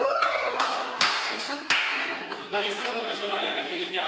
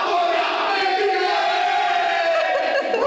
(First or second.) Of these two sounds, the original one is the second